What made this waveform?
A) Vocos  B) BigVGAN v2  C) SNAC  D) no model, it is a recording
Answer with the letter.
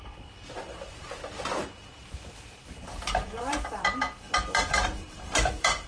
B